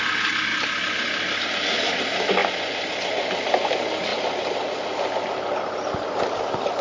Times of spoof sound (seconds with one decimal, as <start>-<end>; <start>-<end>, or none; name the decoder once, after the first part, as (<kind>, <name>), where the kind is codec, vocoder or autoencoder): none

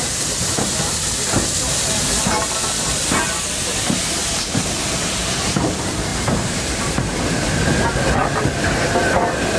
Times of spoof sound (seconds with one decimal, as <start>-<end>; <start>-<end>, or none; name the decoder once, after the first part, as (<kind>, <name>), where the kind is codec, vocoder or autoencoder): 4.2-4.8 (vocoder, BigVGAN v2); 6.1-7.1

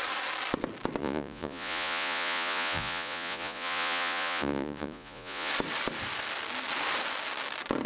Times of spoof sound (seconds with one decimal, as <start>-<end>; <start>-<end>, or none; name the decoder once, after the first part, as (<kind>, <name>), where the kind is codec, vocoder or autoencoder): 1.0-5.5 (vocoder, Vocos)

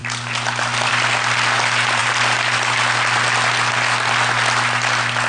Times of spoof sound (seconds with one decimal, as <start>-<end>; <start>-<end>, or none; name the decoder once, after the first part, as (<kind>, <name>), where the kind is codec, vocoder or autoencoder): none

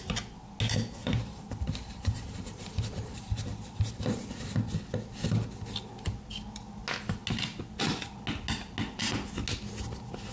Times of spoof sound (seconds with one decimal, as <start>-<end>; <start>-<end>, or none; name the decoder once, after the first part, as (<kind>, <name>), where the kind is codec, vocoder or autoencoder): 1.0-4.6 (vocoder, BigVGAN v2)

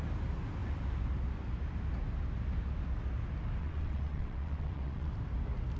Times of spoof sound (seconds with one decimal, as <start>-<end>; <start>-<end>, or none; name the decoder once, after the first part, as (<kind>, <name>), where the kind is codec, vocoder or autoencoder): 3.6-5.1 (vocoder, WaveNeXt)

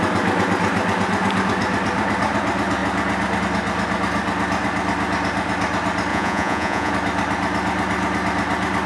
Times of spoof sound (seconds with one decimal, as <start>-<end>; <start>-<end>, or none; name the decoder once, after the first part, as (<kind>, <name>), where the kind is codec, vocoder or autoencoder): 6.1-6.9 (vocoder, Vocos)

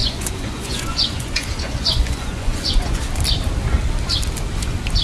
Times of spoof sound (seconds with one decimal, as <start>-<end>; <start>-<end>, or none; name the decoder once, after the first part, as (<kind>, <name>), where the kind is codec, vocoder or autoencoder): 0.0-3.0 (vocoder, Vocos)